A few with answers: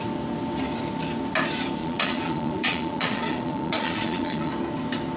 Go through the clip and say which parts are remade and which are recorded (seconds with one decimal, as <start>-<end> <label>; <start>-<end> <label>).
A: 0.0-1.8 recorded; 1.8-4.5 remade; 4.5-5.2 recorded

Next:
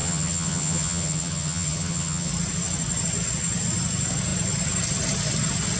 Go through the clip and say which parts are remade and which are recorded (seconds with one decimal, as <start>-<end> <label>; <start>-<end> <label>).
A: 0.0-2.3 remade; 2.3-5.8 recorded

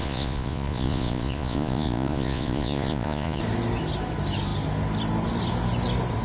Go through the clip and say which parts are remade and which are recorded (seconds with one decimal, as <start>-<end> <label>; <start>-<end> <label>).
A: 0.0-3.4 remade; 3.4-6.2 recorded